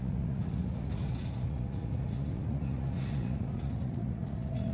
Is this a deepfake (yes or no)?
yes